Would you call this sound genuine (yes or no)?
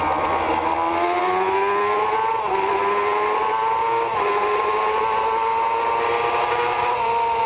yes